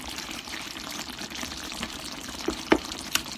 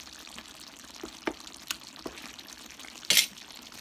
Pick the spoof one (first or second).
first